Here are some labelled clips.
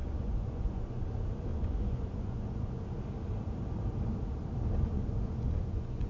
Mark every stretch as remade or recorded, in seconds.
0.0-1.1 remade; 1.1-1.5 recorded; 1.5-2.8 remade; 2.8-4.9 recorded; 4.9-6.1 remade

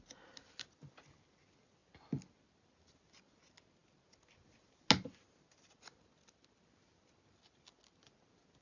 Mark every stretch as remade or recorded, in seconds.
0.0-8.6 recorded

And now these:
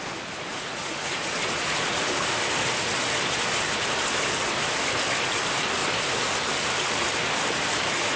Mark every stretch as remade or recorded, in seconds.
0.0-0.5 recorded; 0.5-2.1 remade; 2.1-8.2 recorded

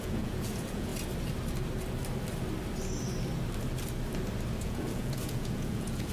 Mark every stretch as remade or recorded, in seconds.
0.0-0.9 remade; 0.9-4.6 recorded; 4.6-6.1 remade

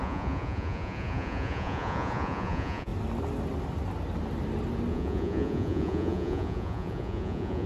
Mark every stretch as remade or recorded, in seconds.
0.0-2.9 remade; 2.9-4.9 recorded; 4.9-7.7 remade